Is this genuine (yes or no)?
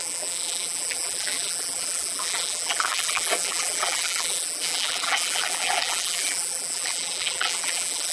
no